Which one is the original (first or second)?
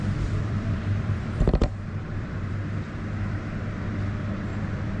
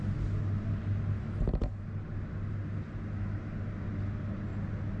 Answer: second